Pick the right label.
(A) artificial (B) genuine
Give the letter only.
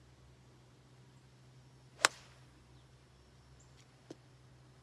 B